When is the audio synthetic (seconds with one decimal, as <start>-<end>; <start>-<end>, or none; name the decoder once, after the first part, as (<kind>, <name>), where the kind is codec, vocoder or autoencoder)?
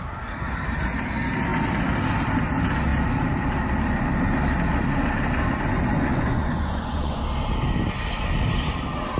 5.9-7.2 (vocoder, Vocos)